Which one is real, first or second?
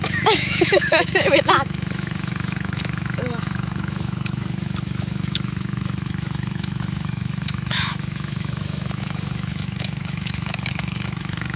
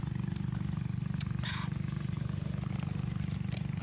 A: second